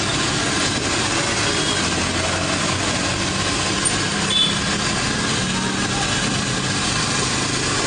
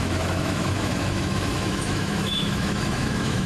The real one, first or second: first